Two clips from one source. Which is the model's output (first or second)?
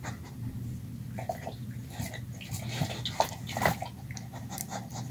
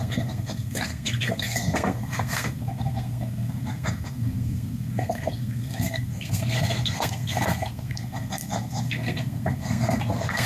second